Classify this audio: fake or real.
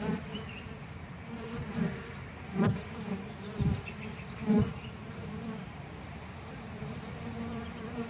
fake